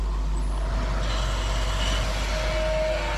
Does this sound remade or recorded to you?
recorded